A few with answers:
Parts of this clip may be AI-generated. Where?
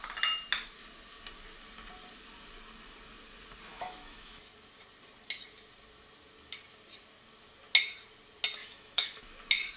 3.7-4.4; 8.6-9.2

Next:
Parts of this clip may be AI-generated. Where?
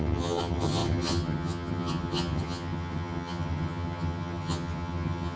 0.0-5.4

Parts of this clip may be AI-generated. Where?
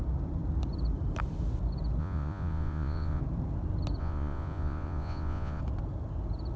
2.0-3.2; 4.0-5.6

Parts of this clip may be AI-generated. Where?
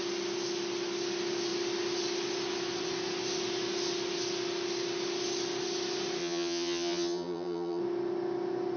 6.2-7.8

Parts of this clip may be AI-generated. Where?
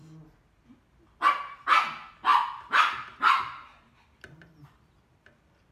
none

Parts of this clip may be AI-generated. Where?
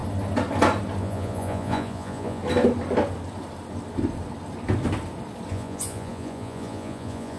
1.0-2.4; 5.5-7.4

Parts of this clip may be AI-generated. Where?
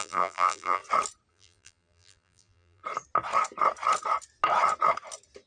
0.0-0.8; 1.3-2.8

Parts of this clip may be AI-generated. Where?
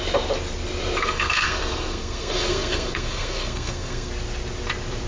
1.0-4.1